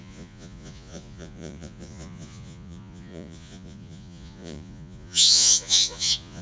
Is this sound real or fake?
fake